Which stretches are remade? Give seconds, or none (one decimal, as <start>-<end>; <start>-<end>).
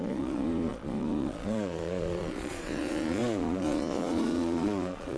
0.0-5.2